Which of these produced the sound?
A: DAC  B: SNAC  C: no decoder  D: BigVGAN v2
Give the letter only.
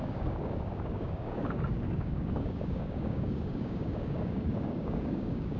A